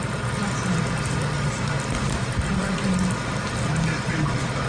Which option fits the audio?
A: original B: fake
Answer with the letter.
A